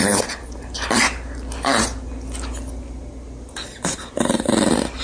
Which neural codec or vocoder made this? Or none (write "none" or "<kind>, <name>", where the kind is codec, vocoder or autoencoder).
none